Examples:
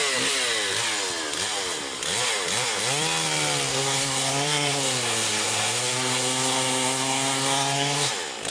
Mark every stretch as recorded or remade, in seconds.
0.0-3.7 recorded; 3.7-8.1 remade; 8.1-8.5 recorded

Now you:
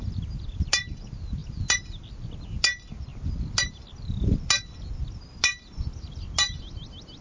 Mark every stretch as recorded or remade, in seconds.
0.0-7.2 recorded

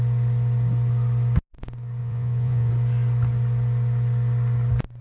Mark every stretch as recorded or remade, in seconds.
0.0-2.0 recorded; 2.0-2.7 remade; 2.7-5.0 recorded

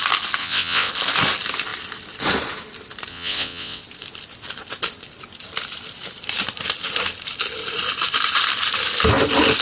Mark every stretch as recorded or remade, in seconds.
0.0-0.4 recorded; 0.4-0.9 remade; 0.9-3.1 recorded; 3.1-3.8 remade; 3.8-9.6 recorded

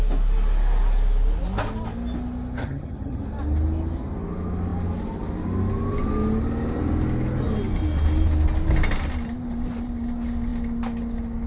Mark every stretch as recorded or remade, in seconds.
0.0-2.6 recorded; 2.6-3.2 remade; 3.2-11.5 recorded